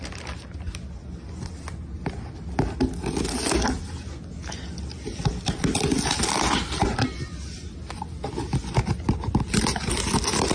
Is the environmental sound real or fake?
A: real